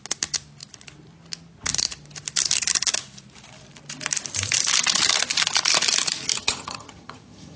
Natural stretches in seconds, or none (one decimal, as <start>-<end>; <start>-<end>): 0.0-6.4